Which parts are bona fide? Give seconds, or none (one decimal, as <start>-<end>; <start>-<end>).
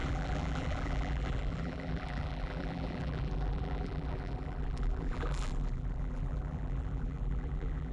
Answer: none